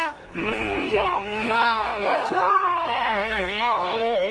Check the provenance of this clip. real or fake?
fake